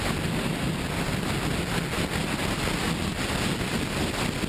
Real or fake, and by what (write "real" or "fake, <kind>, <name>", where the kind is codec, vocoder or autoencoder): real